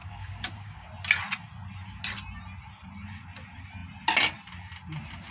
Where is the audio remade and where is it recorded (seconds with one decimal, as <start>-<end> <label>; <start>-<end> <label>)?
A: 0.0-0.9 remade; 0.9-5.3 recorded